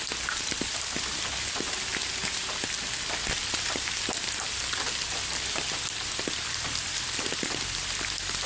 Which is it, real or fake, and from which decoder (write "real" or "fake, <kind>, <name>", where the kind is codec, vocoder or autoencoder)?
real